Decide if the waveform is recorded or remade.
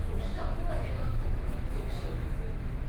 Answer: remade